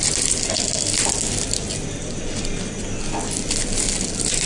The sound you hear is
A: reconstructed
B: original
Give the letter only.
B